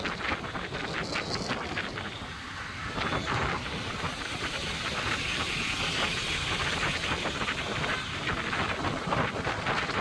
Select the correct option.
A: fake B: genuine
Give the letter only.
B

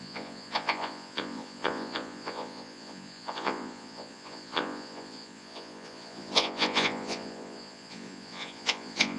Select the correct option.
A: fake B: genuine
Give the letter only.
A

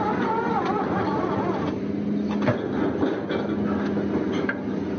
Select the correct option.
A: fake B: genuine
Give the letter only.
B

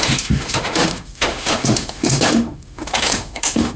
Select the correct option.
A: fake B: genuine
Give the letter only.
A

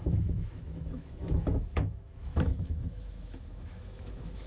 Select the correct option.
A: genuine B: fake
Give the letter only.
B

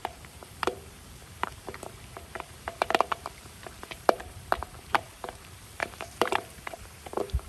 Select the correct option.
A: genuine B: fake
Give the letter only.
B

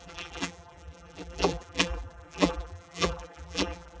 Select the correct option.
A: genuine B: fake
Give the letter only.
B